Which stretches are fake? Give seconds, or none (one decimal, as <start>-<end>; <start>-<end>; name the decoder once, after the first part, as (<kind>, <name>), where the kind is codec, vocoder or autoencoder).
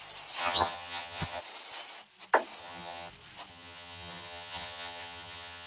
0.4-1.4 (vocoder, HiFi-GAN); 2.6-3.1; 3.5-5.7